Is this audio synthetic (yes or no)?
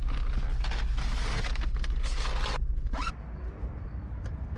no